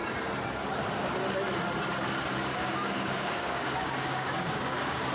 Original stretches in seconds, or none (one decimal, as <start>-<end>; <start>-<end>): 0.0-2.5

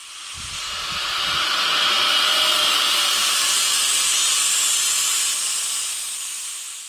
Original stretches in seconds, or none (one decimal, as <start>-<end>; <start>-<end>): 0.0-6.9

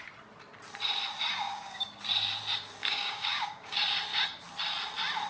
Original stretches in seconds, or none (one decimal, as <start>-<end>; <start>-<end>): 0.0-1.3; 2.0-2.8; 3.8-5.3

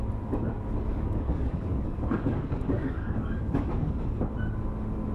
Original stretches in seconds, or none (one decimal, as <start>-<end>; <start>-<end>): 0.0-0.9; 4.0-5.1

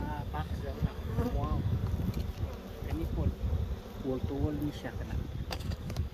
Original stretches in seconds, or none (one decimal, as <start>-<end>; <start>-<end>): 1.8-5.5

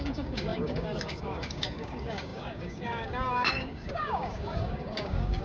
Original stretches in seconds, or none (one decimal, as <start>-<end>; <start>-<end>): none

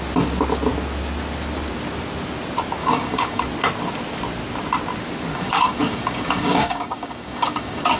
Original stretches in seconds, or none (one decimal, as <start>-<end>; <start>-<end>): 0.0-2.8; 3.4-5.3

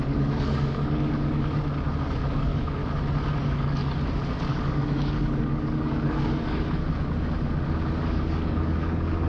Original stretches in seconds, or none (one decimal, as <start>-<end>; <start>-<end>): 1.6-2.3; 2.8-3.4; 3.8-4.5; 6.8-8.0